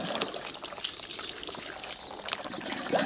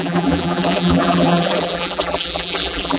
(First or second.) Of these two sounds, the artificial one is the second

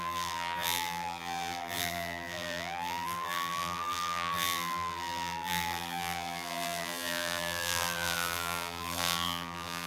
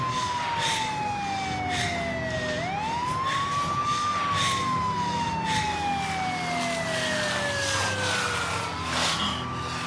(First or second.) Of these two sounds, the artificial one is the first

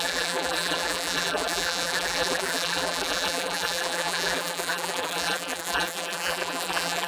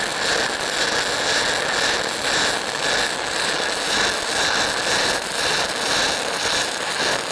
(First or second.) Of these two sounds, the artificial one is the first